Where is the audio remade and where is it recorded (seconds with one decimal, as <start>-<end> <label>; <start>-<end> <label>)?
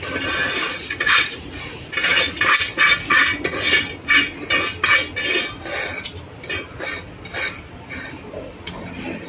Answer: 0.0-0.4 recorded; 0.4-1.9 remade; 1.9-3.3 recorded; 3.3-3.8 remade; 3.8-9.3 recorded